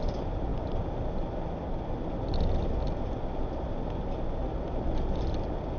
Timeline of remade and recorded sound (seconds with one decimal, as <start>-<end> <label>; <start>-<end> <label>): 0.0-5.8 recorded

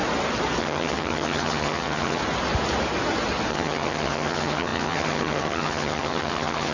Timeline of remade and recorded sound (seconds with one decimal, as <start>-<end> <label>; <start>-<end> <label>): 0.0-0.6 recorded; 0.6-2.2 remade; 2.2-3.5 recorded; 3.5-6.7 remade

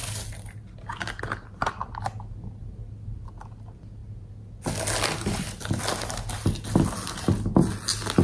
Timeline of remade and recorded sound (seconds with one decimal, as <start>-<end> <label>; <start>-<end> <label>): 0.0-8.2 recorded